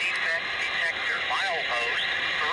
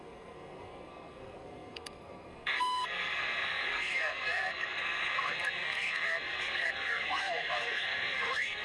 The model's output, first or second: second